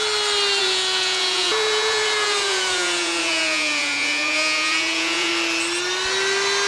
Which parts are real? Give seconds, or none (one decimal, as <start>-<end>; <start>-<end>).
0.0-0.6; 5.3-6.7